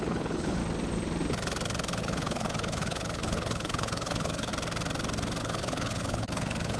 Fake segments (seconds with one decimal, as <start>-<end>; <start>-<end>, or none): 0.0-0.6; 2.0-4.5; 5.4-6.8